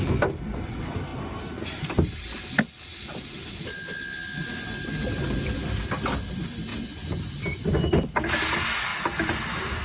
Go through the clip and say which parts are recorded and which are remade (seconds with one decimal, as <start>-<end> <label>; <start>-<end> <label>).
0.0-6.7 recorded; 6.7-8.3 remade; 8.3-9.8 recorded